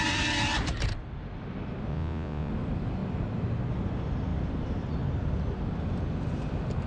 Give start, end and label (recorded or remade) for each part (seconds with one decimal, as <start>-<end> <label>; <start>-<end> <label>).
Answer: 0.0-1.9 recorded; 1.9-2.5 remade; 2.5-6.9 recorded